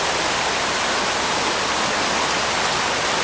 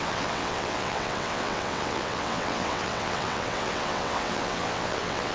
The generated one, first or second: second